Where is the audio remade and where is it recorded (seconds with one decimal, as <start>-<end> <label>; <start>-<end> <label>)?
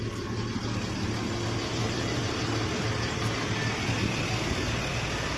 0.0-1.7 recorded; 1.7-2.2 remade; 2.2-5.4 recorded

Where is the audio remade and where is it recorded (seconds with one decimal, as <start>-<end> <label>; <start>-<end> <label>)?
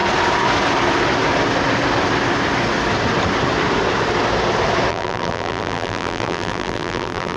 0.0-4.9 recorded; 4.9-7.4 remade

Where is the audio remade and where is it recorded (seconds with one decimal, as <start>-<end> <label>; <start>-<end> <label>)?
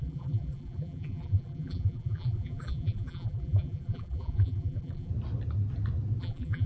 0.0-5.1 remade; 5.1-6.2 recorded; 6.2-6.7 remade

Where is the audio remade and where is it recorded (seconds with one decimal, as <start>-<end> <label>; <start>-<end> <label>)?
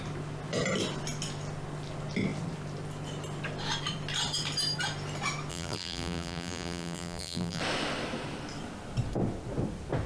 0.0-5.5 recorded; 5.5-7.6 remade; 7.6-10.1 recorded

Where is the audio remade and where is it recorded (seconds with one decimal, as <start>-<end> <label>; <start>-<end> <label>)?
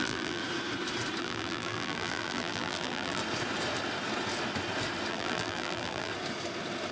0.0-0.4 remade; 0.4-1.2 recorded; 1.2-3.2 remade; 3.2-5.1 recorded; 5.1-6.1 remade; 6.1-6.9 recorded